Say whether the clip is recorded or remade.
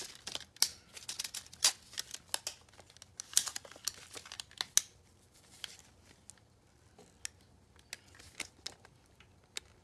recorded